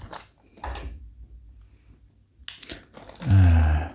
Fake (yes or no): no